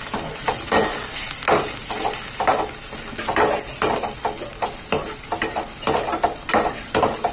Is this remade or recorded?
recorded